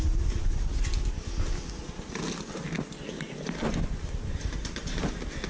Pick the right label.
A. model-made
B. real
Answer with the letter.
B